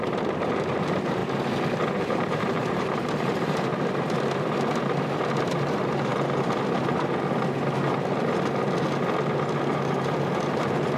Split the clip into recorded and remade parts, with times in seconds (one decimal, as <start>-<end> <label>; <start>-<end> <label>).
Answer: 0.0-1.2 remade; 1.2-2.0 recorded; 2.0-3.7 remade; 3.7-5.5 recorded; 5.5-6.1 remade; 6.1-9.7 recorded; 9.7-11.0 remade